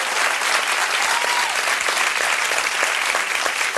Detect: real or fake real